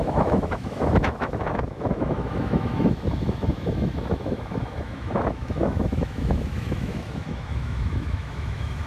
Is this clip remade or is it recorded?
remade